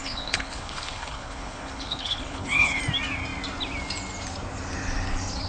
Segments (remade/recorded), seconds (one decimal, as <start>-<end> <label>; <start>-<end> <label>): 0.0-2.8 remade; 2.8-5.5 recorded